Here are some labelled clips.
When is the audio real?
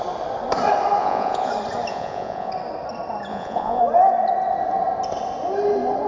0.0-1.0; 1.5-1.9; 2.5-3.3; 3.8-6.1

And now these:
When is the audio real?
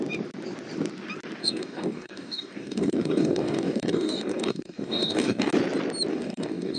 0.0-1.4; 5.5-6.1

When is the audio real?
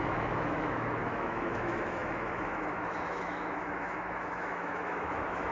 none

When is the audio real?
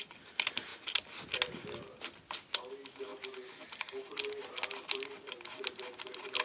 0.0-6.4